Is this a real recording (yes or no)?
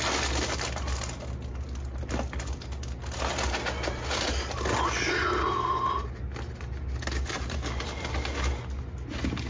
yes